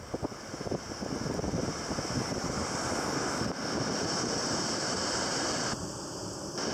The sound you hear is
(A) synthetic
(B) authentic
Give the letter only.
B